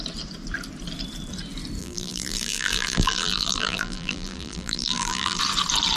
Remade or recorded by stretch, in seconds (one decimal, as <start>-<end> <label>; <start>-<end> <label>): 0.0-1.8 recorded; 1.8-5.4 remade; 5.4-6.0 recorded